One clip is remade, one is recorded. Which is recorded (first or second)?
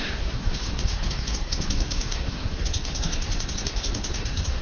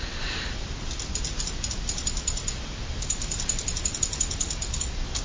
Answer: second